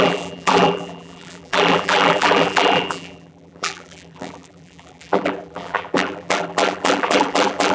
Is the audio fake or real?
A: fake